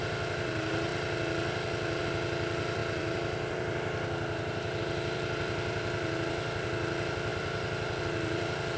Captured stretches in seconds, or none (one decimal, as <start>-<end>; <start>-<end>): 0.9-2.0